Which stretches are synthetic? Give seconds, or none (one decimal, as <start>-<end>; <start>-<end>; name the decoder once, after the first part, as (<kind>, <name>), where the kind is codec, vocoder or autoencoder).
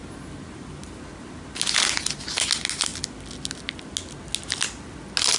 none